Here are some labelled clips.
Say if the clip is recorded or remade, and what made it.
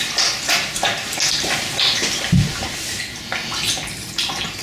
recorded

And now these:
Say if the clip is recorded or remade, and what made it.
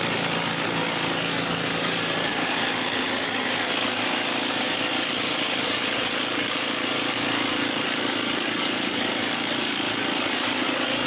remade, codec, DAC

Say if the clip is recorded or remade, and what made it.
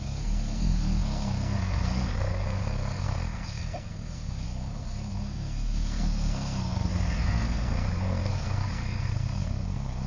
remade, codec, SNAC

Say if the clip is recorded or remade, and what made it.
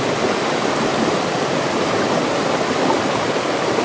recorded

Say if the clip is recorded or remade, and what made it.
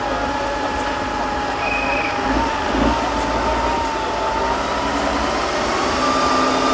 recorded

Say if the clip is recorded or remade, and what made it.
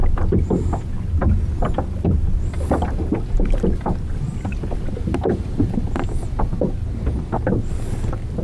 recorded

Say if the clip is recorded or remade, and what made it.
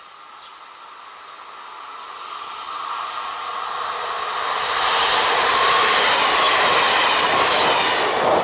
recorded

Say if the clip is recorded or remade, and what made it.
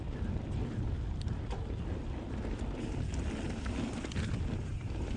recorded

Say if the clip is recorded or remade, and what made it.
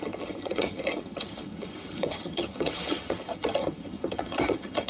remade, vocoder, HiFi-GAN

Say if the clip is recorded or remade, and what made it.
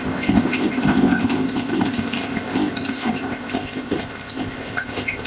remade, codec, ZipCodec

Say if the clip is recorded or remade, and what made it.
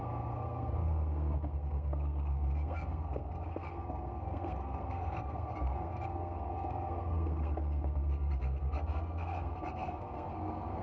remade, codec, SNAC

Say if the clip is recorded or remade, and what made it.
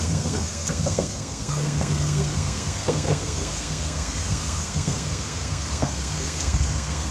remade, codec, SNAC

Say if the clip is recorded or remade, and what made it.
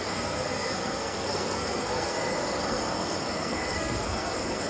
remade, codec, SNAC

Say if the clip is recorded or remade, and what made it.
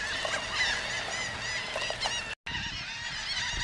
recorded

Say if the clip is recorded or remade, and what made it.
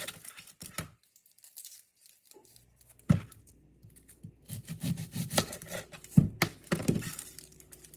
recorded